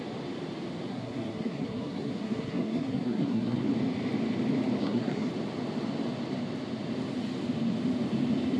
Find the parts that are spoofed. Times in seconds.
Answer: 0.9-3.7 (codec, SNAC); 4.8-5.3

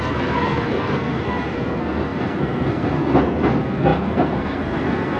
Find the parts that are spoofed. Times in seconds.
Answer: 0.0-5.2 (codec, SNAC)

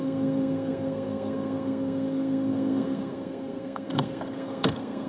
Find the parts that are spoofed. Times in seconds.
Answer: 0.0-5.1 (codec, SNAC)

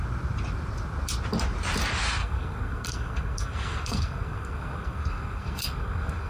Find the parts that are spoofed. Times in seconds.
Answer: 2.2-6.3 (codec, SNAC)

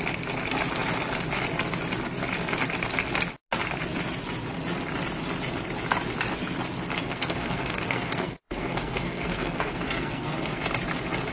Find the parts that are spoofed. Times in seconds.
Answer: 7.0-10.6 (codec, SNAC)

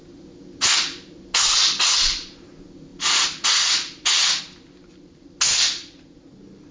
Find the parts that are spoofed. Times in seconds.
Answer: none

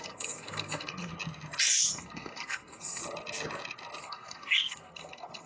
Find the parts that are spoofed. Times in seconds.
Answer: 0.0-1.1 (codec, SNAC); 1.9-3.0; 4.0-5.5

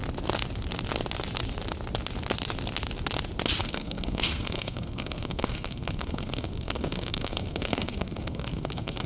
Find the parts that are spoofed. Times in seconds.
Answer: 3.6-9.1 (codec, SNAC)